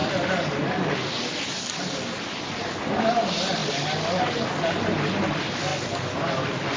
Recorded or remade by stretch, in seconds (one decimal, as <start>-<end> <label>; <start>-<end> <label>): 0.0-2.9 recorded; 2.9-3.6 remade; 3.6-5.3 recorded; 5.3-5.7 remade; 5.7-6.8 recorded